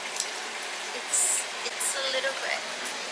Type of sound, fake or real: real